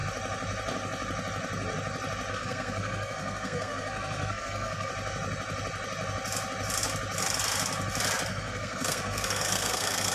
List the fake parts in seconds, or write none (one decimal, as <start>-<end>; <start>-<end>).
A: 2.3-4.9; 8.3-10.1